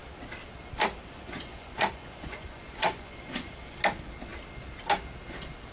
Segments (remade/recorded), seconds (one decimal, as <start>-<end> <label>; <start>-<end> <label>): 0.0-1.1 recorded; 1.1-3.5 remade; 3.5-5.7 recorded